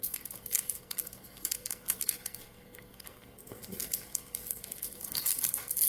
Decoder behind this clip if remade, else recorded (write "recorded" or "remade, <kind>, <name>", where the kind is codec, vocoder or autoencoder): remade, codec, SNAC